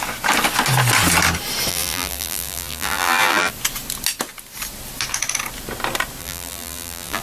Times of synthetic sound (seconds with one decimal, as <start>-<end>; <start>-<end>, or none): 1.7-3.5; 6.2-7.2